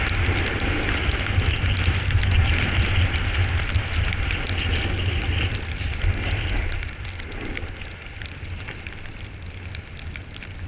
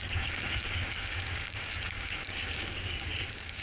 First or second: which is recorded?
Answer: first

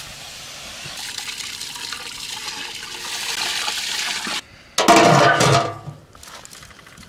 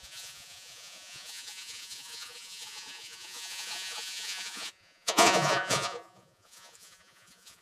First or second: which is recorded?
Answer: first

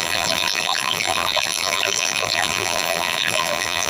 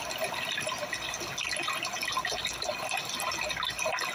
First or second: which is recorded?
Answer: second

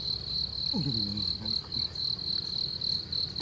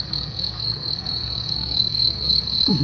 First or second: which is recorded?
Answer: first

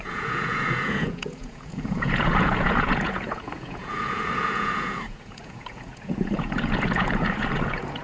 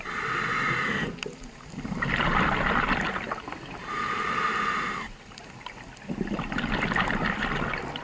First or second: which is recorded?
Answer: second